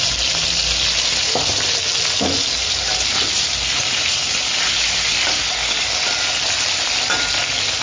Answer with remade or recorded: recorded